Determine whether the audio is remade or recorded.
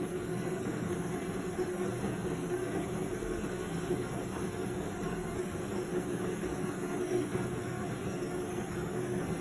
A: remade